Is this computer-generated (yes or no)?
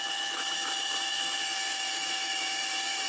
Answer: yes